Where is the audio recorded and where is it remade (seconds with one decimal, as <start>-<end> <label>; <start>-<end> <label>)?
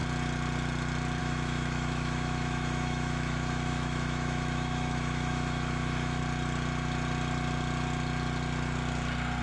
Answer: 0.0-1.2 recorded; 1.2-6.2 remade; 6.2-9.4 recorded